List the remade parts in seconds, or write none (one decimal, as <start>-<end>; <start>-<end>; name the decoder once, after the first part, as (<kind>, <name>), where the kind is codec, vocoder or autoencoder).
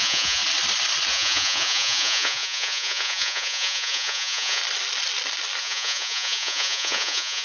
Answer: 0.0-0.4 (vocoder, Vocos); 1.1-4.6; 5.6-7.4